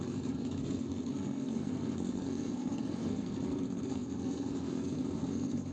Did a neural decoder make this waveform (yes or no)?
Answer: yes